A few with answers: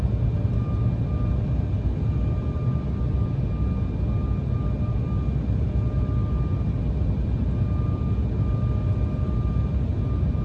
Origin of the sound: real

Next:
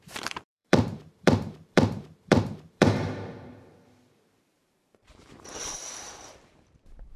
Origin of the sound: fake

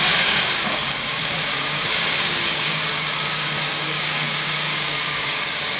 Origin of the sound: fake